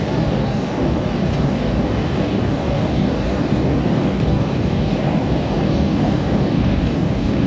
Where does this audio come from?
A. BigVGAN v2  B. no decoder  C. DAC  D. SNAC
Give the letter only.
C